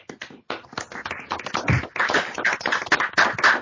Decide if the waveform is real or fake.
real